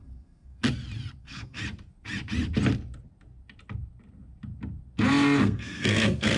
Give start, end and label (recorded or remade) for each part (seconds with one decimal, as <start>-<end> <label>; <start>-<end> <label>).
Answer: 0.0-0.6 remade; 0.6-1.2 recorded; 1.2-1.6 remade; 1.6-5.4 recorded; 5.4-6.4 remade

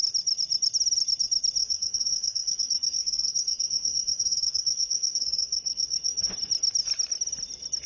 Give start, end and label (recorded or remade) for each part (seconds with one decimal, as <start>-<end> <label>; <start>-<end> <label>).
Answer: 0.0-1.6 recorded; 1.6-6.3 remade; 6.3-7.9 recorded

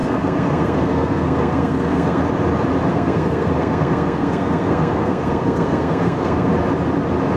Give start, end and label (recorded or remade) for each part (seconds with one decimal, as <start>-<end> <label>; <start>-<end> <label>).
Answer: 0.0-2.2 remade; 2.2-2.9 recorded; 2.9-6.5 remade; 6.5-7.4 recorded

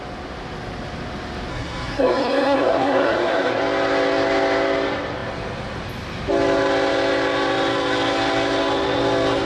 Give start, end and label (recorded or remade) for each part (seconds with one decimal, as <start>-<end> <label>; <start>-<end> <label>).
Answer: 0.0-1.5 recorded; 1.5-3.6 remade; 3.6-9.5 recorded

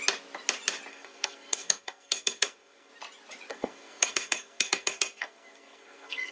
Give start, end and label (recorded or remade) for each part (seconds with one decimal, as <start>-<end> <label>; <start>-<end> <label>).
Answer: 0.0-0.9 recorded; 0.9-2.9 remade; 2.9-3.5 recorded; 3.5-6.3 remade